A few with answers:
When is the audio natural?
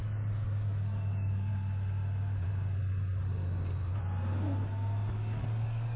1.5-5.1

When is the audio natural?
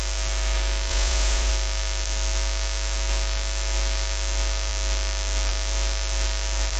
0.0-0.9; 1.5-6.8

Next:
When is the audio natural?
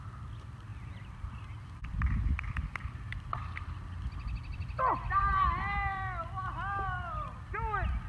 0.0-8.1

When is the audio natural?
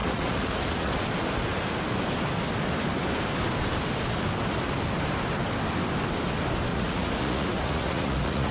0.9-6.7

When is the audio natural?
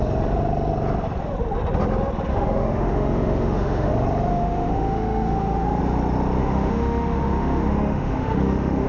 0.0-2.3; 3.9-4.3; 5.8-6.4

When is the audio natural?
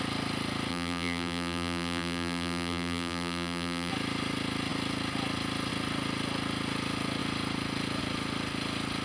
0.0-0.7; 3.9-9.0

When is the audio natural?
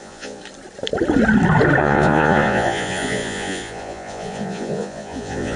0.4-1.8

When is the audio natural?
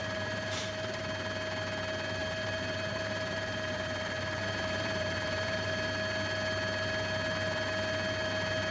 1.0-2.2; 5.7-8.7